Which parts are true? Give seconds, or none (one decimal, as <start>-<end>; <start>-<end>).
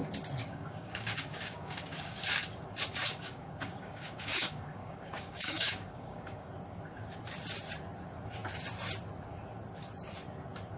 0.0-0.4; 2.3-3.0; 6.5-10.8